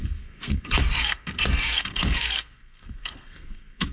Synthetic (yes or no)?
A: yes